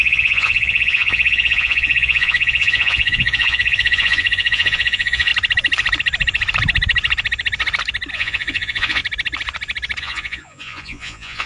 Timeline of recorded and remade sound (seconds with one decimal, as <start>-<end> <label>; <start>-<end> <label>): 0.0-5.3 remade; 5.3-8.1 recorded; 8.1-9.0 remade; 9.0-10.0 recorded; 10.0-11.5 remade